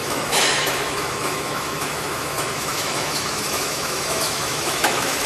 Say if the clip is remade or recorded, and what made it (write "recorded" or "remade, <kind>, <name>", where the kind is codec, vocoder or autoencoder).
remade, autoencoder, DAC-VAE